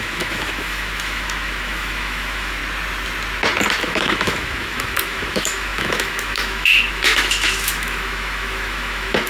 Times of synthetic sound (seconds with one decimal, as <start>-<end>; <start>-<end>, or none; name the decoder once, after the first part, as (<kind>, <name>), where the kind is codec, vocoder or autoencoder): 0.0-2.6 (autoencoder, DAC-VAE); 3.8-9.3